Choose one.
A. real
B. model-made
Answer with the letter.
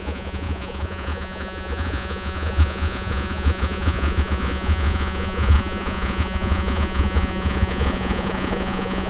B